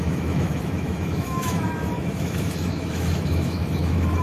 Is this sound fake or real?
fake